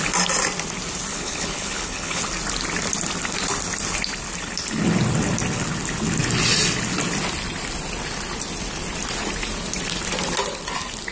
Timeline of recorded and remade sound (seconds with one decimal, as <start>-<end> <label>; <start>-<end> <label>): 0.0-1.1 recorded; 1.1-2.2 remade; 2.2-11.1 recorded